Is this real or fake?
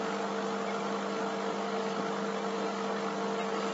real